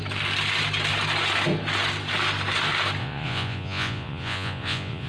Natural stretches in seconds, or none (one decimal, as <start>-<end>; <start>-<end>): 0.0-3.0